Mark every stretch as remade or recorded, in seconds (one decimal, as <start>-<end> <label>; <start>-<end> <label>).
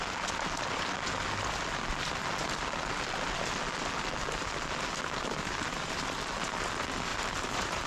0.0-5.4 recorded; 5.4-5.9 remade; 5.9-7.1 recorded; 7.1-7.9 remade